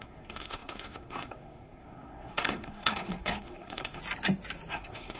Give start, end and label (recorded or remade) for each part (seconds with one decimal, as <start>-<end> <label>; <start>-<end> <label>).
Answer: 0.0-4.0 remade; 4.0-4.7 recorded; 4.7-5.2 remade